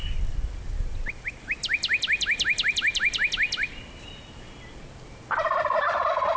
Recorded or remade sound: remade